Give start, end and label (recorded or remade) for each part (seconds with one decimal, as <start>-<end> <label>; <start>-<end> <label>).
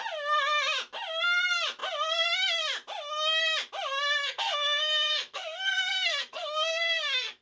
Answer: 0.0-4.2 recorded; 4.2-7.4 remade